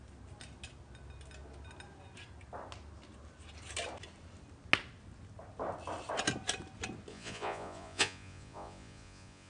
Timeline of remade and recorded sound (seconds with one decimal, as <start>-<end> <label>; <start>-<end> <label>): 0.0-7.1 recorded; 7.1-9.5 remade